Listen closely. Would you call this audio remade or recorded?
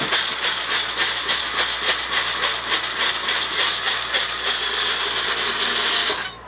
recorded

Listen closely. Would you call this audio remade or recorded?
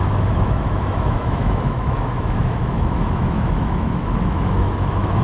remade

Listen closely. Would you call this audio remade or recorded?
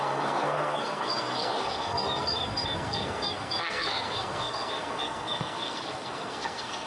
remade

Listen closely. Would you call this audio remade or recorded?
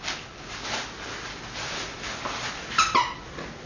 recorded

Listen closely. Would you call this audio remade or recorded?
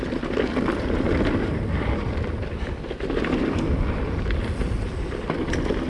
recorded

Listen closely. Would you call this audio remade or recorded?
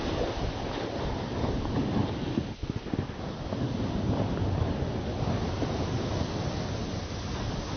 recorded